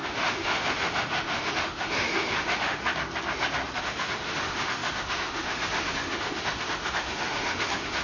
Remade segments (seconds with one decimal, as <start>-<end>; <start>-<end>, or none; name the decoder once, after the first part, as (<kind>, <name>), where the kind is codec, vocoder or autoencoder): 0.0-2.8 (autoencoder, DAC-VAE); 3.8-8.0